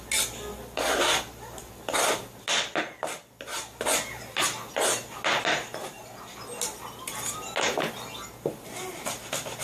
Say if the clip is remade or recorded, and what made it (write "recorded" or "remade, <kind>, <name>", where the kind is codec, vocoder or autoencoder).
recorded